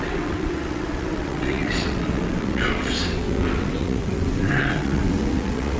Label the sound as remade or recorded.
remade